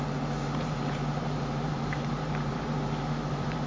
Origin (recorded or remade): remade